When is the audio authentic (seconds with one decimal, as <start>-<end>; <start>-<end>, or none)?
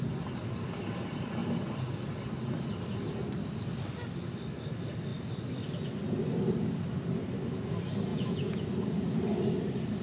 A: 0.0-8.1; 8.6-10.0